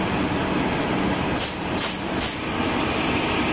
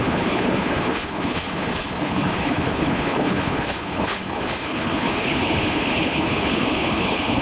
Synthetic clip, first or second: second